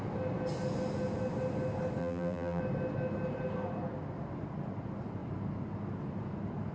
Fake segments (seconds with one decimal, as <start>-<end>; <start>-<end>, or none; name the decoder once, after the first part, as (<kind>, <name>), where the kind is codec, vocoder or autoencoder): 2.0-2.6 (vocoder, BigVGAN v2)